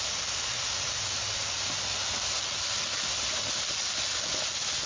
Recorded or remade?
recorded